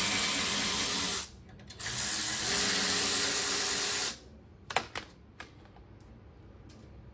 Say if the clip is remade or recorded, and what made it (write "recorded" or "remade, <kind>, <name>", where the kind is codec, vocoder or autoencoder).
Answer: recorded